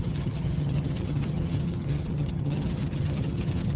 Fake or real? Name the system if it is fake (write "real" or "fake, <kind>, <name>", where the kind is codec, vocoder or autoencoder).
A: fake, vocoder, HiFi-GAN